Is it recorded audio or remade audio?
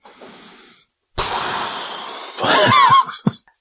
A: recorded